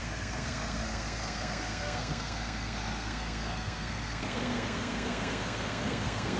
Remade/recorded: remade